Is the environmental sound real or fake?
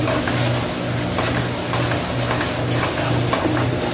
real